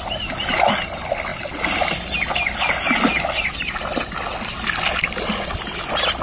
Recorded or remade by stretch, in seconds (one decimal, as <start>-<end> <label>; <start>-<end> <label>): 0.0-6.2 recorded